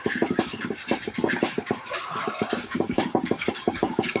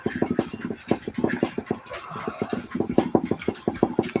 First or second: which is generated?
first